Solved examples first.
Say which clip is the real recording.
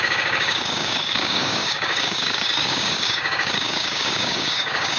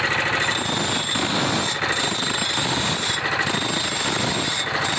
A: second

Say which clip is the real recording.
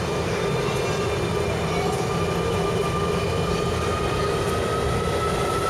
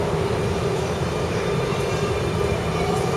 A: first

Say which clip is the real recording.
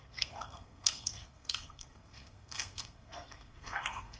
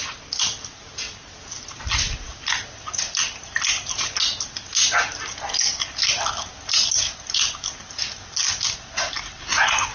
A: second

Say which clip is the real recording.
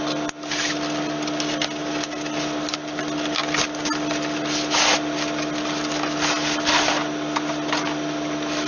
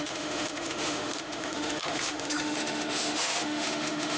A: first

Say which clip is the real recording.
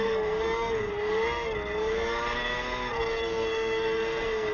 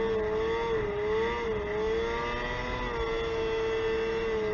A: second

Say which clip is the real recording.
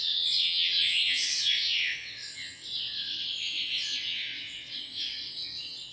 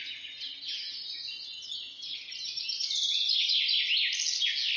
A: second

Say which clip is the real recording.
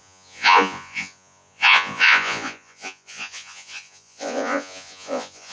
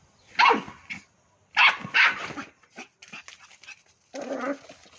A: second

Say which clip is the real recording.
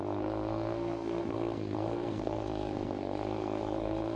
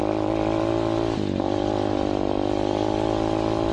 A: second